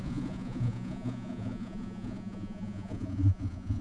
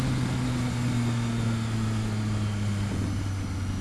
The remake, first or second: first